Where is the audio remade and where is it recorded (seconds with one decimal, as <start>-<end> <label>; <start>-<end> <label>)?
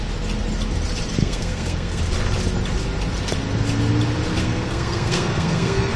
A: 0.0-1.2 recorded; 1.2-2.0 remade; 2.0-4.4 recorded; 4.4-6.0 remade